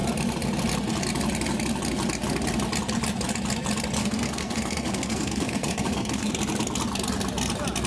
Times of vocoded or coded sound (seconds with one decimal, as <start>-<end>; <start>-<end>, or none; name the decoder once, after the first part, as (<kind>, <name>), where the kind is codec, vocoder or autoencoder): 4.0-6.3 (codec, SNAC)